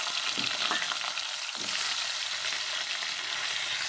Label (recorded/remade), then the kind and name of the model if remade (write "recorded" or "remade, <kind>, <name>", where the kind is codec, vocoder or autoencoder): recorded